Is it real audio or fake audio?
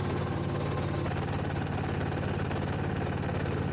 real